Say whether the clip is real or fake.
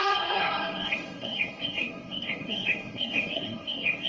fake